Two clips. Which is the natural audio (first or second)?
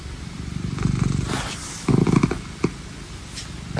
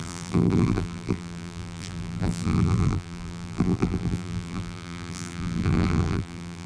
first